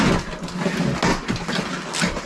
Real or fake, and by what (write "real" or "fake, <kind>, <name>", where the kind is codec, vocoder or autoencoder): real